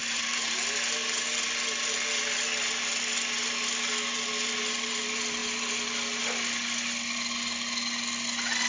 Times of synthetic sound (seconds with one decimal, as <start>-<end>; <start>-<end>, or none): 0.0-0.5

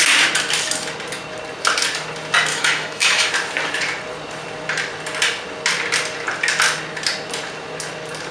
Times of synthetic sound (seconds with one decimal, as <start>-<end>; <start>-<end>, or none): 2.5-3.3

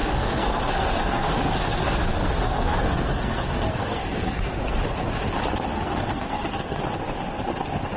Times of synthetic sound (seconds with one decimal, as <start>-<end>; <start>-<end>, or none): 0.0-4.8; 5.7-6.8